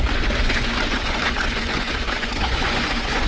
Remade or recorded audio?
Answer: remade